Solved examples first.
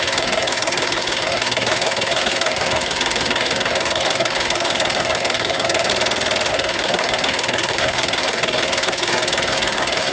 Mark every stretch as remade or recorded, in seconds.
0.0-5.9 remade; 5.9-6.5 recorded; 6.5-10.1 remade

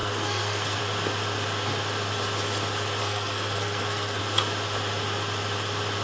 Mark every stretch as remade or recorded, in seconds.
0.0-0.8 remade; 0.8-3.0 recorded; 3.0-4.2 remade; 4.2-6.0 recorded

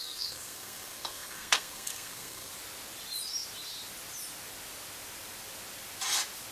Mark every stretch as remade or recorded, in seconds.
0.0-2.5 remade; 2.5-6.5 recorded